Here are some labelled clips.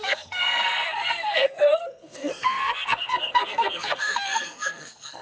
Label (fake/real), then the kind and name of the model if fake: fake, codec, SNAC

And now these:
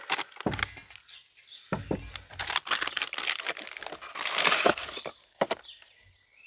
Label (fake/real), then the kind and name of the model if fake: real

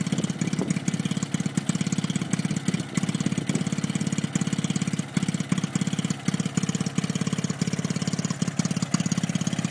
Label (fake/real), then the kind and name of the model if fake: real